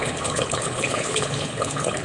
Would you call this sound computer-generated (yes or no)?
yes